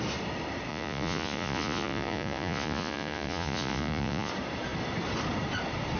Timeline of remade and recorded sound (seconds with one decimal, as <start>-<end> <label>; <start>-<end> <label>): 0.0-0.7 recorded; 0.7-4.3 remade; 4.3-6.0 recorded